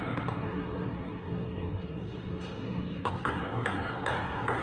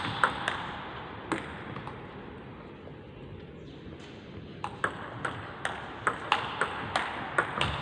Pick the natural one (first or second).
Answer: second